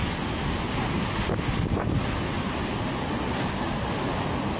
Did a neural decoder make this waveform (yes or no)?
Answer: no